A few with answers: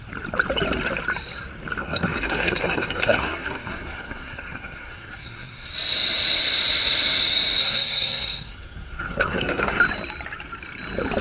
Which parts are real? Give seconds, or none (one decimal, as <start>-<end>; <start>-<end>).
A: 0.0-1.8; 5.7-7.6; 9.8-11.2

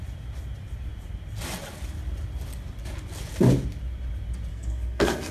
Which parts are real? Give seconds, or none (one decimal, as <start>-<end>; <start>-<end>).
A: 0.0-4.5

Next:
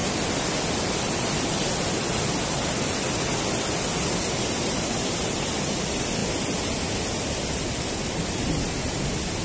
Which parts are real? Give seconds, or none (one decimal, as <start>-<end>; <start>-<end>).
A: 0.0-9.4

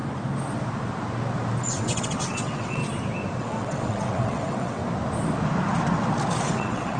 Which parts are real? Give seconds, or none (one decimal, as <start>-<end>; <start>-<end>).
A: 0.0-1.6; 2.8-3.4; 4.8-6.4